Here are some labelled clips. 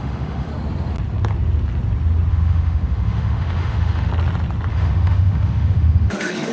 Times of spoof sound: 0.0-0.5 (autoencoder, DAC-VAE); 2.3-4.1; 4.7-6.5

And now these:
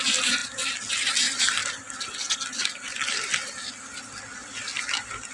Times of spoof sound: none